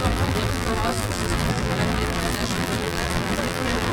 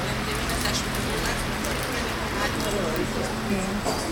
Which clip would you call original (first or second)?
second